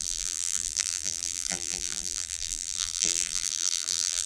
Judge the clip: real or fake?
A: fake